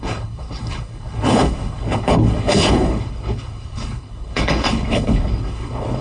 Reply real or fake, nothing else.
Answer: fake